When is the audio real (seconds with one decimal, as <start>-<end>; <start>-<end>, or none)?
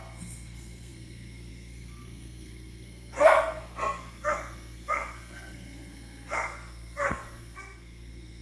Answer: none